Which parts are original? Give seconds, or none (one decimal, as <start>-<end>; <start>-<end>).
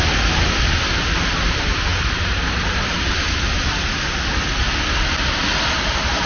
0.0-6.3